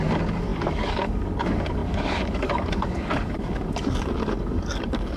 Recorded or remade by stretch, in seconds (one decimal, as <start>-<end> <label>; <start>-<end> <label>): 0.0-5.2 remade